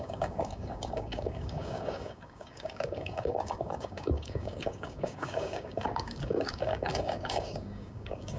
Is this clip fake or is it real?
fake